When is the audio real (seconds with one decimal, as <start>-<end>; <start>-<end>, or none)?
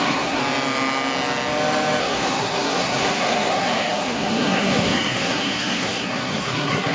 0.4-2.0